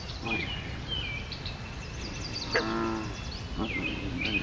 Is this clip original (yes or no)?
yes